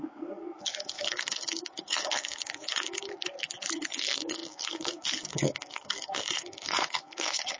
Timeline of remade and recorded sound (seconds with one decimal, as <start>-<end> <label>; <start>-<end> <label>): 0.0-3.1 remade; 3.1-3.7 recorded; 3.7-7.6 remade